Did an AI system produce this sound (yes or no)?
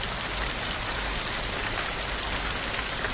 no